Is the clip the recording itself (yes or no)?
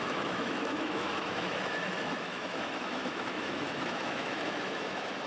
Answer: no